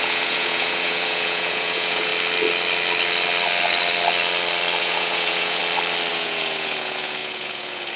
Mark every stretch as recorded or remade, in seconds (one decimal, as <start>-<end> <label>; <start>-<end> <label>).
0.0-2.1 remade; 2.1-4.8 recorded; 4.8-5.6 remade; 5.6-6.1 recorded; 6.1-8.0 remade